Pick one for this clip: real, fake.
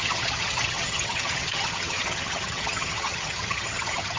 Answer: fake